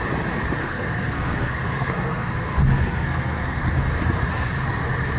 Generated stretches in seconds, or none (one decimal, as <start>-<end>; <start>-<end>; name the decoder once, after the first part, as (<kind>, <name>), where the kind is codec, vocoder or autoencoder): 0.6-3.7 (codec, SNAC)